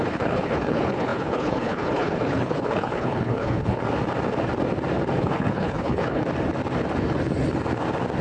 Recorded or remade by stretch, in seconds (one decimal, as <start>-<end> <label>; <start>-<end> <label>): 0.0-3.8 remade; 3.8-5.2 recorded; 5.2-6.2 remade; 6.2-8.2 recorded